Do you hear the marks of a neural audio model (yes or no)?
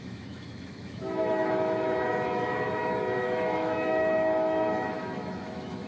yes